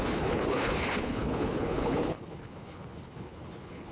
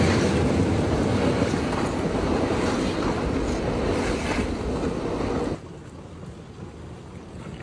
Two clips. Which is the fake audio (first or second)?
first